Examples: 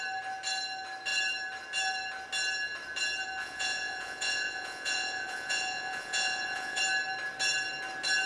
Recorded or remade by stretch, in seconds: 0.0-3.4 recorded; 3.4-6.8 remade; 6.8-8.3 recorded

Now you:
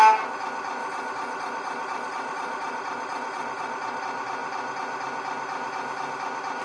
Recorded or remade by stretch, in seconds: 0.0-0.8 recorded; 0.8-4.0 remade; 4.0-6.6 recorded

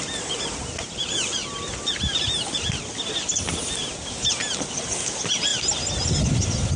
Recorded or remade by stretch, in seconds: 0.0-6.8 recorded

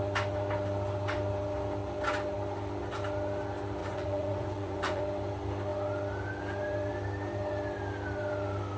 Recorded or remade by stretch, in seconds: 0.0-3.8 recorded; 3.8-5.0 remade; 5.0-8.8 recorded

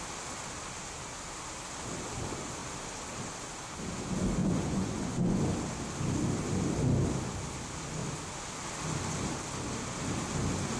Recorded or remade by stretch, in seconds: 0.0-4.4 recorded; 4.4-5.4 remade; 5.4-10.8 recorded

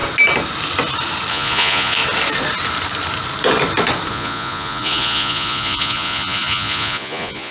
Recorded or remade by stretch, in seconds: 0.0-1.3 recorded; 1.3-2.0 remade; 2.0-4.1 recorded; 4.1-7.5 remade

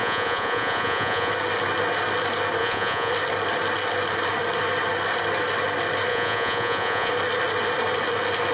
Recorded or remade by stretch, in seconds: 0.0-1.3 remade; 1.3-2.6 recorded; 2.6-3.1 remade; 3.1-6.1 recorded; 6.1-7.1 remade; 7.1-8.5 recorded